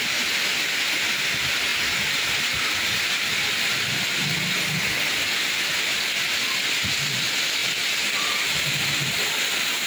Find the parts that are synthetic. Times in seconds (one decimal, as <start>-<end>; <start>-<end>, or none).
1.7-3.5; 7.6-8.8